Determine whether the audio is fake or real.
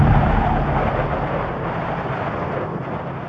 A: real